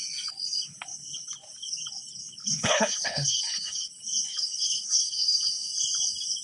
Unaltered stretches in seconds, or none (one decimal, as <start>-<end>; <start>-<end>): 0.0-2.4; 3.9-4.3; 5.7-6.4